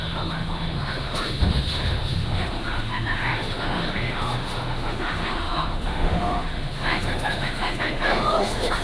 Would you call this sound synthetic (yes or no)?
yes